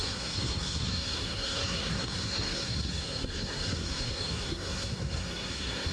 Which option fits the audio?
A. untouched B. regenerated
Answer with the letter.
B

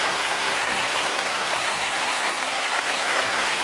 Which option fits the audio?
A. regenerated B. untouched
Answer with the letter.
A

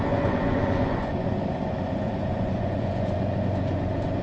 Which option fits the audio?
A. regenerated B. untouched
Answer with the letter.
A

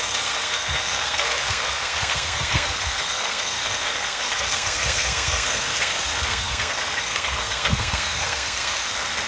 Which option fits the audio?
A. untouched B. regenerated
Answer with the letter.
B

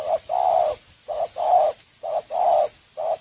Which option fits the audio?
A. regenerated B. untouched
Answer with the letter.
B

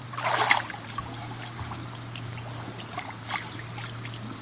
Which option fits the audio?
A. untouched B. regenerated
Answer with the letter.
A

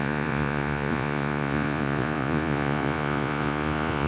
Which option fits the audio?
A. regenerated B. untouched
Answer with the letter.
A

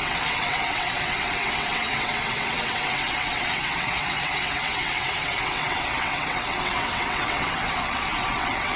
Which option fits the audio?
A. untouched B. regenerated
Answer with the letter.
B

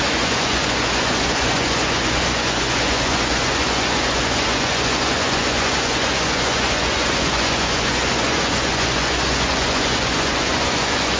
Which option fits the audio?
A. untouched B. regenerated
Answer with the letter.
B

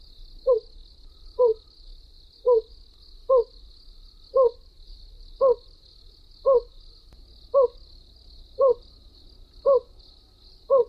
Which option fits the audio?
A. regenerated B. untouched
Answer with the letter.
B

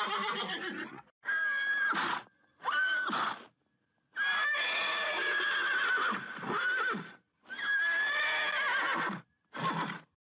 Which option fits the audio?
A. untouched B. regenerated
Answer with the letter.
A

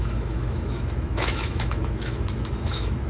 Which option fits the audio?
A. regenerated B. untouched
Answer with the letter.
A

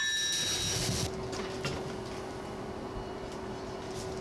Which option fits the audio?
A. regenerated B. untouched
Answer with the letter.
B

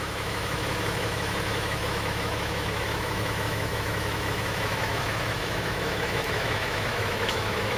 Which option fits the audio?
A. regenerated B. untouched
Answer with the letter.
A